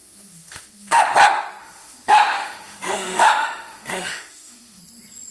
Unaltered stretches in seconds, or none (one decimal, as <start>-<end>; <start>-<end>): 1.1-1.6; 4.8-5.3